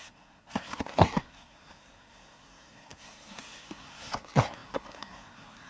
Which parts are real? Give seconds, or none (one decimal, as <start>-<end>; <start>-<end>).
none